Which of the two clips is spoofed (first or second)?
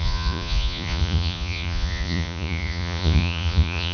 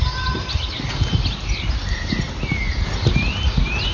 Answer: first